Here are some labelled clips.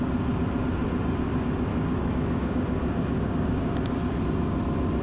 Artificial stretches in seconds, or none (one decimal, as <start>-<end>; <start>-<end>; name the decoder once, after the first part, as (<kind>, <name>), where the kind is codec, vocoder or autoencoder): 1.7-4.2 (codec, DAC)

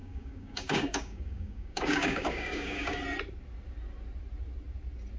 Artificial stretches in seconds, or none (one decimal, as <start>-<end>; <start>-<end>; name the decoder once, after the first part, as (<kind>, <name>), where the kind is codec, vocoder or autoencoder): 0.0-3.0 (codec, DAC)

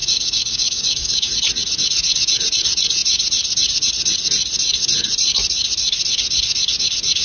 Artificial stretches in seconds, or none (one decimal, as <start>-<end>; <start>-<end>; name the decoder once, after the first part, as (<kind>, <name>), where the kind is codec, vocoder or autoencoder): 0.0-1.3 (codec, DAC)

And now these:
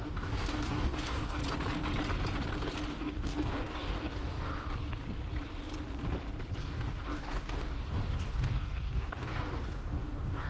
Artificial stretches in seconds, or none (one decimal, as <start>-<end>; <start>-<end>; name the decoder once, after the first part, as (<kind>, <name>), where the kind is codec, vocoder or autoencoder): 0.0-1.4 (codec, DAC); 2.9-4.5; 6.6-10.5

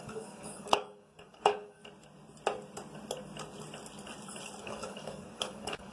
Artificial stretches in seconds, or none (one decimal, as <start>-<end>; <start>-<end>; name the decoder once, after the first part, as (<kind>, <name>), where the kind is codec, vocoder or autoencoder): 0.0-1.8 (codec, DAC); 4.6-5.9

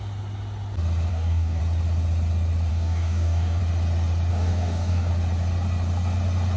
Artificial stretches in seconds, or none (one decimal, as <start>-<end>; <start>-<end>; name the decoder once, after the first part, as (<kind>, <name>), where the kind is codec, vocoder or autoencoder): 1.1-1.6 (codec, DAC); 2.7-3.6; 4.3-5.1